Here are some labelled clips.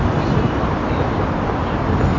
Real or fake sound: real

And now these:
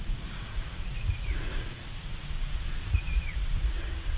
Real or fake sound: fake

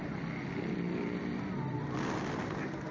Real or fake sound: real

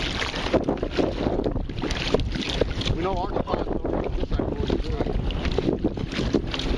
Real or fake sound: real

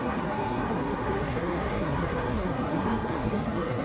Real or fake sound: fake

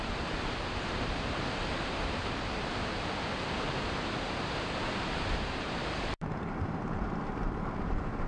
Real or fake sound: fake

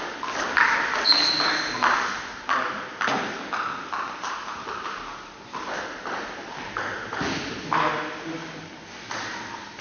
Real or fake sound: real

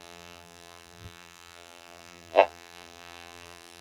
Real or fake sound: fake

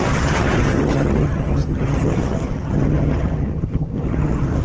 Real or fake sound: fake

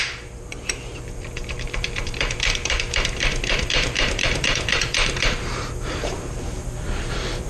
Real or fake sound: fake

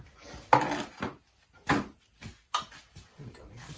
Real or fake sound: real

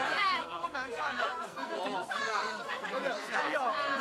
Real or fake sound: fake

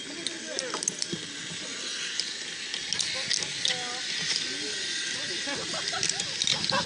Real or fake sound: real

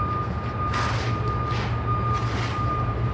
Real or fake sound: real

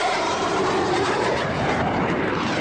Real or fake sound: fake